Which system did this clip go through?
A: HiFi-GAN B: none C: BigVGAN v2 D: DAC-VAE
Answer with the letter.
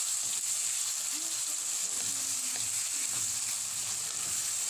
B